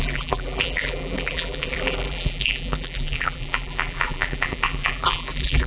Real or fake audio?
fake